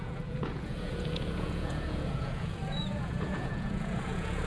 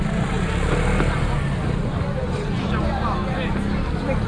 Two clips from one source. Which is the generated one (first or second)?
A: first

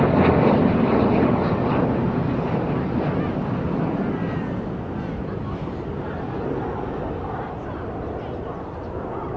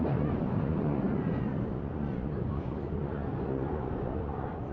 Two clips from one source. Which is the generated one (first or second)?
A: second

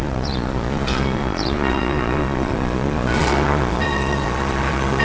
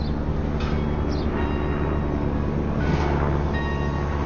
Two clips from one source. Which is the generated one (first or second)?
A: first